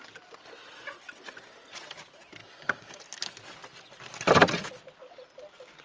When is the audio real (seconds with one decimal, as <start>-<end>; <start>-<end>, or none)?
0.0-2.4; 3.0-5.8